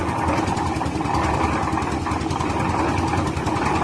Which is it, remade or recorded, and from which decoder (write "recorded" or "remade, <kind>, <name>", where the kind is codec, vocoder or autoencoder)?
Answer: recorded